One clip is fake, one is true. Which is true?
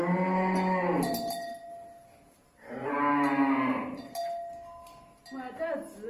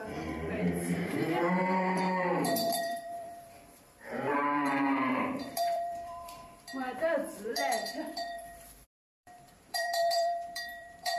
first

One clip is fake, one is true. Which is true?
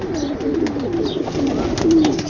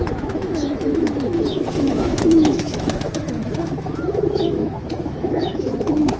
first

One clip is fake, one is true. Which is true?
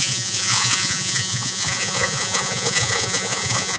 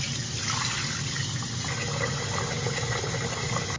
second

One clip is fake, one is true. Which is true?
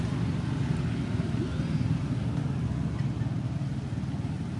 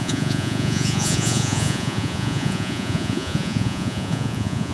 first